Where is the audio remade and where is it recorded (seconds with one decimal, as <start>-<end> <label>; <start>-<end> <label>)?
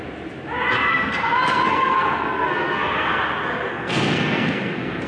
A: 0.0-0.9 recorded; 0.9-3.2 remade; 3.2-3.7 recorded; 3.7-5.1 remade